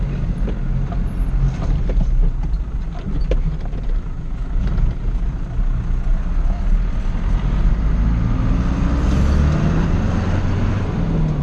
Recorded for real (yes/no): yes